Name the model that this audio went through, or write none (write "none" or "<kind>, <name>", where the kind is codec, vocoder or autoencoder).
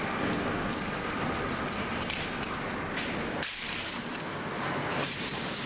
none